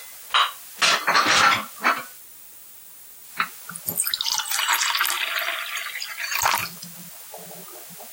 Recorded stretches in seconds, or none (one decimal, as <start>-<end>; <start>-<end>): 0.0-8.1